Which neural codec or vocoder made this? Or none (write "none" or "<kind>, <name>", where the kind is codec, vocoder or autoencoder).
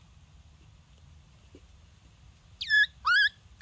none